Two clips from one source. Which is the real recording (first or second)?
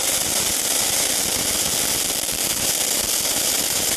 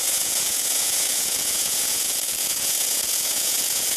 first